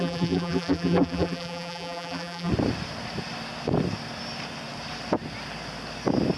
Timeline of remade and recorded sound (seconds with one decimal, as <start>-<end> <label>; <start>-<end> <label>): 0.0-2.5 remade; 2.5-6.4 recorded